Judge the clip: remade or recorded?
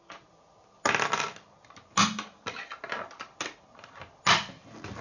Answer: recorded